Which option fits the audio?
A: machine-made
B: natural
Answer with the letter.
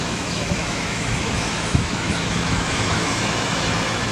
A